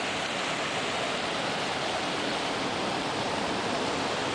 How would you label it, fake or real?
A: real